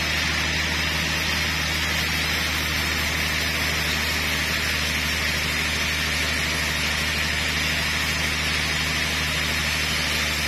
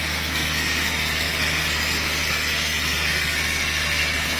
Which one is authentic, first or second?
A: first